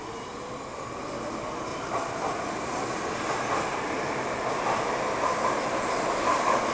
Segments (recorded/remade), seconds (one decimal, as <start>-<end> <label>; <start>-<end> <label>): 0.0-1.7 recorded; 1.7-3.3 remade; 3.3-6.7 recorded